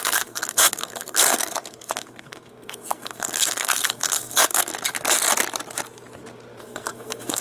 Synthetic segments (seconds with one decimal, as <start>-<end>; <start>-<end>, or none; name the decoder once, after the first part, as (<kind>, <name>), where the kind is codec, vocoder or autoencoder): 0.0-4.7 (codec, SNAC); 6.6-7.4

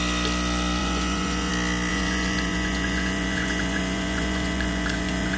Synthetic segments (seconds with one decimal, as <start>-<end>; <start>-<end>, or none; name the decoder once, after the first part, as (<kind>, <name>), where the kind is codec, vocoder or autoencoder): 0.8-1.5 (vocoder, Vocos); 1.9-5.4

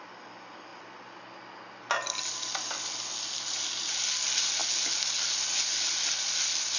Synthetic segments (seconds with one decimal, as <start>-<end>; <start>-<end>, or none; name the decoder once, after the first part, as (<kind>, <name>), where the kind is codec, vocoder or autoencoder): none

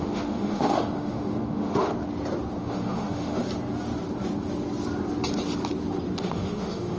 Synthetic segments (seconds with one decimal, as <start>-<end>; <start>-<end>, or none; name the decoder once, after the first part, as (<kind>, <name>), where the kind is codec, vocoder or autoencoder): 0.0-1.9 (autoencoder, DAC-VAE); 2.6-3.4; 6.2-7.0